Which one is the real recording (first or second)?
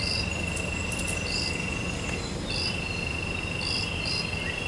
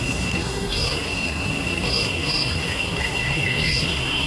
first